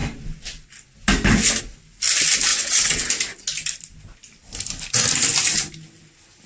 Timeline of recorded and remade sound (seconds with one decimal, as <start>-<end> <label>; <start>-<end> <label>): 0.0-2.5 recorded; 2.5-3.1 remade; 3.1-6.5 recorded